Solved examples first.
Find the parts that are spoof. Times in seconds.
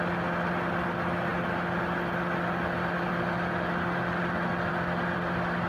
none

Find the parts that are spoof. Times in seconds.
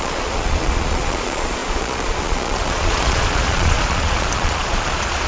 0.0-5.3 (vocoder, Vocos)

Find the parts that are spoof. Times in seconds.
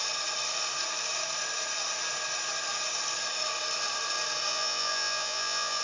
4.5-5.8 (vocoder, Vocos)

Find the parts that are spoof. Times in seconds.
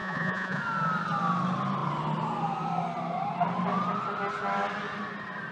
0.0-0.6 (vocoder, Vocos)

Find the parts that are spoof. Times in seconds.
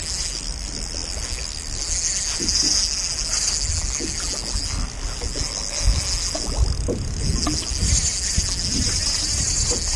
none